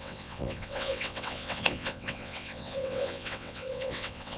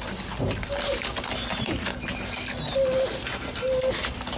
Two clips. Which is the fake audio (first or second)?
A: first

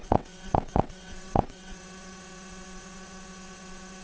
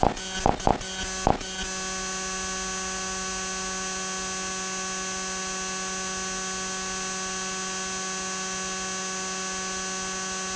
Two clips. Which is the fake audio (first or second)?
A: first